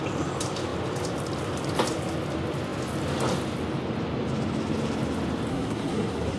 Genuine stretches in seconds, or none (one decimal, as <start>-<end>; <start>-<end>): 0.0-5.5